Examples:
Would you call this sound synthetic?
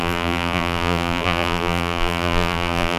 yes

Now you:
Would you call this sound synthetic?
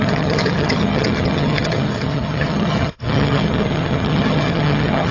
yes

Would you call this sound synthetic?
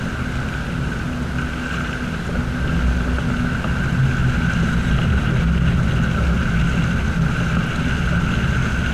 no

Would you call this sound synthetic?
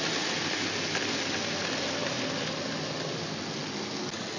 no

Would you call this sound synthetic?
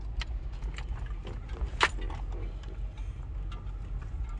no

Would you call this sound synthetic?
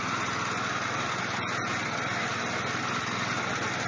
no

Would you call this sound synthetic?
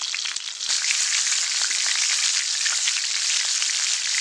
no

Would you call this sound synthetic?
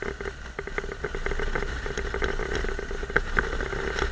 no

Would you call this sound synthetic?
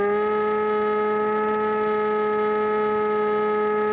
no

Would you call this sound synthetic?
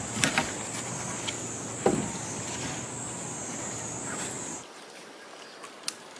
no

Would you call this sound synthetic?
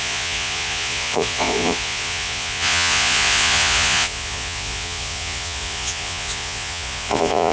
yes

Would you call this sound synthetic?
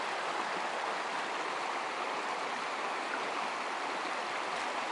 no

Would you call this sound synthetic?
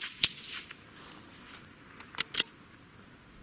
no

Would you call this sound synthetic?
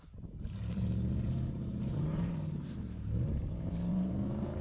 yes